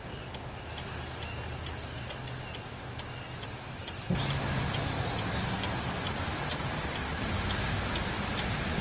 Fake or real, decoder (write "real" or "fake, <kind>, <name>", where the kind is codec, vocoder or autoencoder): real